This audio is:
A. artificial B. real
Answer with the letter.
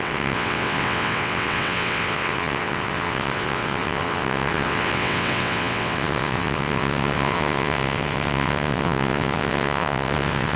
A